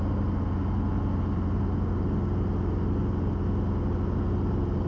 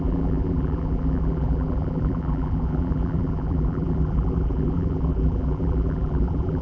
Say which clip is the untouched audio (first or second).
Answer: first